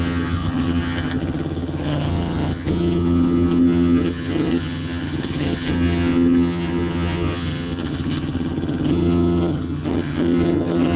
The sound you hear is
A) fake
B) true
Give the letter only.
A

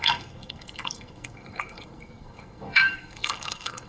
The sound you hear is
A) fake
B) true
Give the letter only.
A